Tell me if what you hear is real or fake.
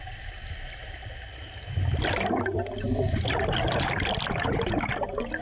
real